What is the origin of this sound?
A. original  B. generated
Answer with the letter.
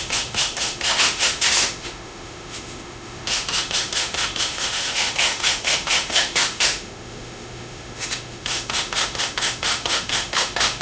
B